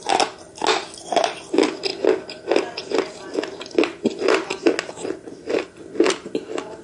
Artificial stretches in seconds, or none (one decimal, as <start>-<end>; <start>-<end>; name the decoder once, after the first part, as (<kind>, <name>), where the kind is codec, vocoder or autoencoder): none